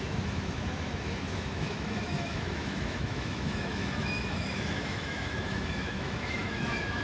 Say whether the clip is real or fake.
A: fake